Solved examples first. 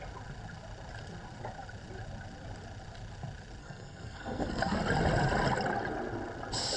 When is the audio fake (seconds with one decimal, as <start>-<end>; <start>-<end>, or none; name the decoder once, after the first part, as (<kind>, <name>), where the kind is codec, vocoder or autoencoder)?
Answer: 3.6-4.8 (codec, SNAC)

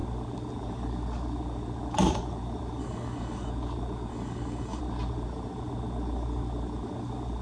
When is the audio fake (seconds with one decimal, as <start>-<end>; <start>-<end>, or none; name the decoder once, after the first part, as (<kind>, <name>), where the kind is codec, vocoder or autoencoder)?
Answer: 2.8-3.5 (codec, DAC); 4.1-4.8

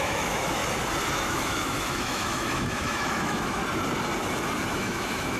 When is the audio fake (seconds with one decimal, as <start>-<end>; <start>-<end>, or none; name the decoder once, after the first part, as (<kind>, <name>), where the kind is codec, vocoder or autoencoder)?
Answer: 0.0-0.6 (autoencoder, DAC-VAE); 1.1-3.6; 4.7-5.4

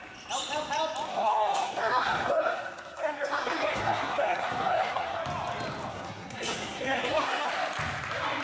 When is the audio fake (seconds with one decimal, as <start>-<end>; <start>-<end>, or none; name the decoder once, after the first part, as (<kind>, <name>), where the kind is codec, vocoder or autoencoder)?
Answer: 1.1-5.2 (codec, SNAC); 5.9-7.5